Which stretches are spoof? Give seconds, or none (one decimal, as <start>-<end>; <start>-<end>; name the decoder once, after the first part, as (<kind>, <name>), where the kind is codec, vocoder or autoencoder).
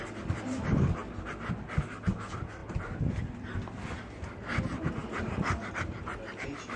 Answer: none